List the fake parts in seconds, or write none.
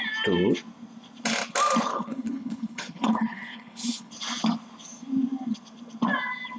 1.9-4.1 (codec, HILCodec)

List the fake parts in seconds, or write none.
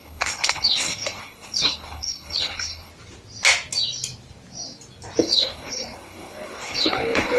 0.0-2.9 (codec, HILCodec); 5.2-7.4